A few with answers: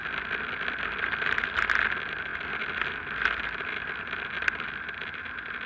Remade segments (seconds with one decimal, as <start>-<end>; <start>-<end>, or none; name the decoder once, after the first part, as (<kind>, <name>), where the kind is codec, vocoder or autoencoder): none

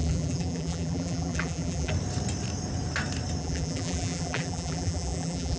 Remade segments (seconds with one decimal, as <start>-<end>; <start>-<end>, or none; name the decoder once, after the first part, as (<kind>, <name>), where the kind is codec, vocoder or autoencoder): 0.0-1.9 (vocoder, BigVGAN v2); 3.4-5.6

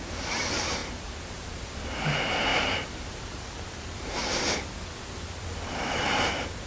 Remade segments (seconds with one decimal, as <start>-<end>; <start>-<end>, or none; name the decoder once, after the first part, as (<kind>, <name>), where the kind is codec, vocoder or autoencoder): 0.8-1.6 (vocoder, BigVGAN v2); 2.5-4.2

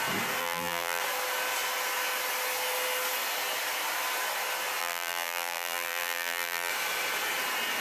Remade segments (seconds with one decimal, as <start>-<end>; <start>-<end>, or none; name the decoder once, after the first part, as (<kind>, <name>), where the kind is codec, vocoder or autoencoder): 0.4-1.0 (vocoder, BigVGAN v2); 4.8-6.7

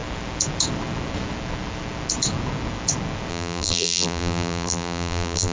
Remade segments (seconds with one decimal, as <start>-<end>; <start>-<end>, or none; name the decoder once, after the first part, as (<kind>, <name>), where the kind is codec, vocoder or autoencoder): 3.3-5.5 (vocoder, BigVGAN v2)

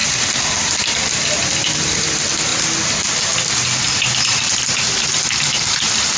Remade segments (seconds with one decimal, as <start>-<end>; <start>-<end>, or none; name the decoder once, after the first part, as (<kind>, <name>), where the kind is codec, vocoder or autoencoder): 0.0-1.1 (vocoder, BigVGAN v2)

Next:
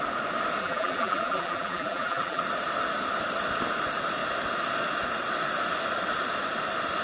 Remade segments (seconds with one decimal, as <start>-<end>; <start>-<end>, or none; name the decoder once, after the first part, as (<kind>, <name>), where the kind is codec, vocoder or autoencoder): 0.6-2.4 (vocoder, BigVGAN v2)

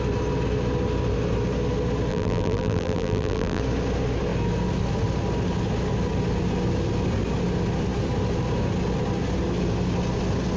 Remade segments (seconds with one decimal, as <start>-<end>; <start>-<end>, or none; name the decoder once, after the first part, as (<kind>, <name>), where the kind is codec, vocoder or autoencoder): 2.1-3.6 (vocoder, BigVGAN v2)